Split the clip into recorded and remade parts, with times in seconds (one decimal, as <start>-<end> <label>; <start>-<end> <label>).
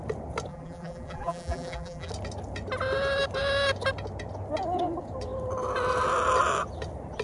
0.0-0.5 recorded; 0.5-2.1 remade; 2.1-7.2 recorded